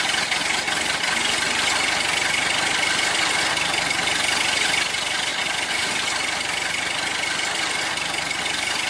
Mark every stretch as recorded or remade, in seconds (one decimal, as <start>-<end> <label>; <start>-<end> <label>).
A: 0.0-8.9 recorded